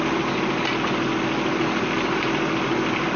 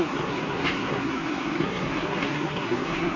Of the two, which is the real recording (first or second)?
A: first